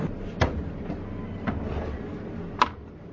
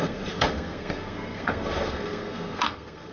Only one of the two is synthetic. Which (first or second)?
second